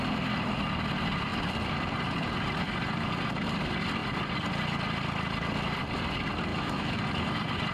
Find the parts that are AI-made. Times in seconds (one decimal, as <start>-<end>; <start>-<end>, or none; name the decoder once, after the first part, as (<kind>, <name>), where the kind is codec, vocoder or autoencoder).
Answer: 6.5-7.0 (autoencoder, DAC-VAE)